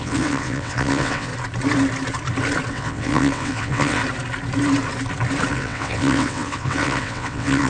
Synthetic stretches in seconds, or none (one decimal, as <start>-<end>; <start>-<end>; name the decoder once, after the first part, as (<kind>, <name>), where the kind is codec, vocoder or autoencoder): 0.0-1.3 (vocoder, WaveNeXt); 2.7-4.0; 5.5-7.7